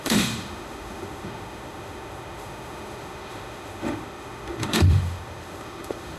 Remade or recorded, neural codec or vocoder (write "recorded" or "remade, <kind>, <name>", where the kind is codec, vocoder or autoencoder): remade, autoencoder, DAC-VAE